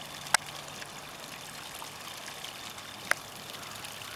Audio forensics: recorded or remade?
recorded